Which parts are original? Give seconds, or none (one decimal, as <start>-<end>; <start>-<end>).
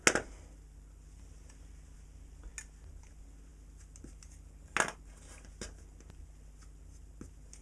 0.0-7.6